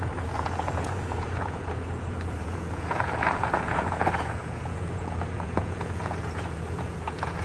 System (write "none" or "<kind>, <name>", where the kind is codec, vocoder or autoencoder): vocoder, Vocos